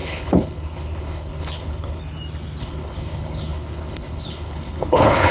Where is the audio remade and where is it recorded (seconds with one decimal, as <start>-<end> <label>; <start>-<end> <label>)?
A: 0.0-2.0 remade; 2.0-2.6 recorded; 2.6-5.3 remade